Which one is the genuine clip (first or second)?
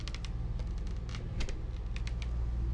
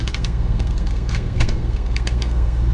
first